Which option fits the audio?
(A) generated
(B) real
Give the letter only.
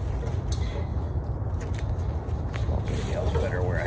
B